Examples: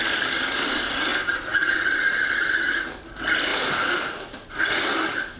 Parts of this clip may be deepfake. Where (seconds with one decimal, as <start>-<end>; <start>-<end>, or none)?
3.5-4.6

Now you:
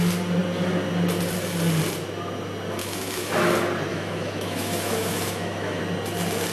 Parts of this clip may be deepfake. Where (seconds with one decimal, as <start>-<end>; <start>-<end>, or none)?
2.8-3.3; 3.9-5.8

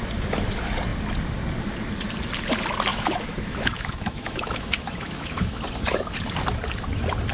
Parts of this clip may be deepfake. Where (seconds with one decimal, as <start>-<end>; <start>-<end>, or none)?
2.9-5.6

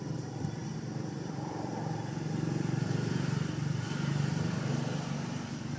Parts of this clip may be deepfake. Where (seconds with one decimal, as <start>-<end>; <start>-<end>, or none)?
0.0-5.8

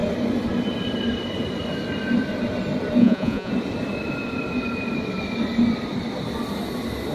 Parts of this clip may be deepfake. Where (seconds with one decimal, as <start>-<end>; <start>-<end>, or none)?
3.0-3.5

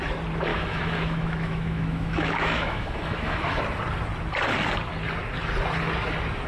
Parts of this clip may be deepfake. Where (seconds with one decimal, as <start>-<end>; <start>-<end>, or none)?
0.5-3.6

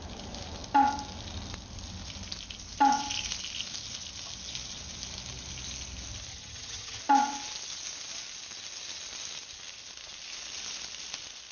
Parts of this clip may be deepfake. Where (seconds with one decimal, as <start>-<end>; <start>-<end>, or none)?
6.3-7.0

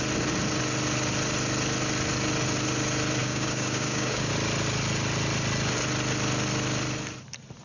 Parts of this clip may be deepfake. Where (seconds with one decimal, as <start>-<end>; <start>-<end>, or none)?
3.2-4.3